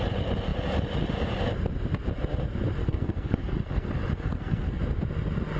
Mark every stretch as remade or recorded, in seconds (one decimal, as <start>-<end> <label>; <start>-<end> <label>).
0.0-2.8 recorded; 2.8-4.8 remade; 4.8-5.6 recorded